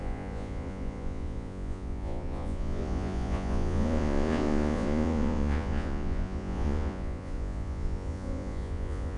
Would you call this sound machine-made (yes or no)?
yes